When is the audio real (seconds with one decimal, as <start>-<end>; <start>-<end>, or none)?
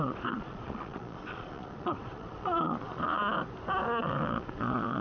3.2-4.0